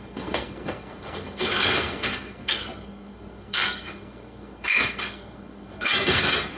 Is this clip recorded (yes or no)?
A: no